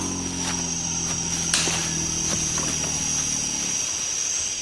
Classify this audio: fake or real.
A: real